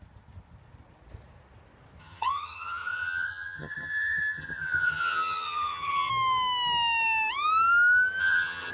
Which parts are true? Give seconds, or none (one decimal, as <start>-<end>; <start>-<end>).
0.0-2.0; 6.1-8.2